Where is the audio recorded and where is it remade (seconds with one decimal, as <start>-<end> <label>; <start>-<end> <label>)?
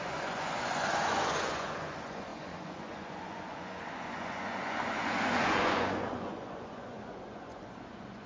0.0-8.3 remade